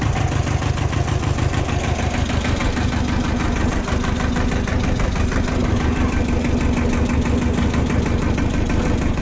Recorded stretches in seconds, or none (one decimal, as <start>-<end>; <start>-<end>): 0.0-9.2